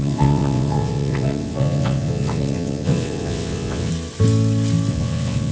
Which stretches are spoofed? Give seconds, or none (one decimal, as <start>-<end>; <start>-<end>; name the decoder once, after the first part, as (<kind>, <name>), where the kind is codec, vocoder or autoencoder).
0.0-3.9 (vocoder, WaveNeXt); 4.9-5.5